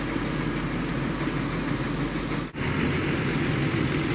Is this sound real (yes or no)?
yes